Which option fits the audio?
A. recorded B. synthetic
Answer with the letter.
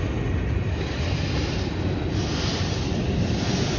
A